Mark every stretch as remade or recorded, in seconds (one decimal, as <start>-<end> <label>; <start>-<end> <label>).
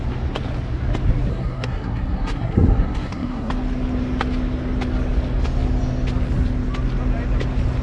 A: 0.0-1.3 recorded; 1.3-3.5 remade; 3.5-7.8 recorded